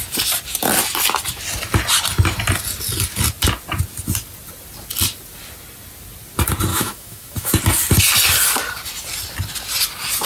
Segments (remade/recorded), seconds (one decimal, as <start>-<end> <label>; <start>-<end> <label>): 0.0-6.7 recorded; 6.7-7.5 remade; 7.5-10.3 recorded